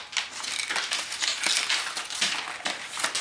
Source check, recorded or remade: recorded